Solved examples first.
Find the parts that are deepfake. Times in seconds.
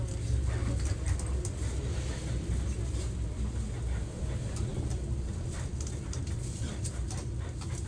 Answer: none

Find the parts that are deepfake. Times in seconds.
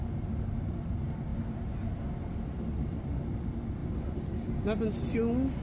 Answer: 3.8-4.3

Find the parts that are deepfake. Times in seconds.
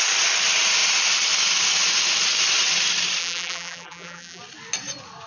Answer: 3.2-4.4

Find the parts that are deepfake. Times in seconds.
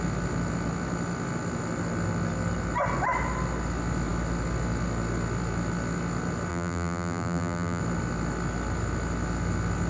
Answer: 6.5-7.8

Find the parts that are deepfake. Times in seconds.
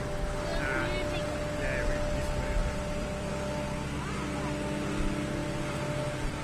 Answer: 2.6-3.3; 5.4-6.0